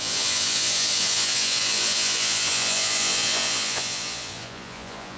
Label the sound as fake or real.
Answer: fake